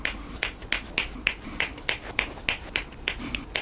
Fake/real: real